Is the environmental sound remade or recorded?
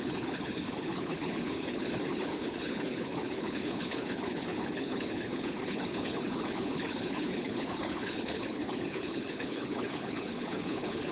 remade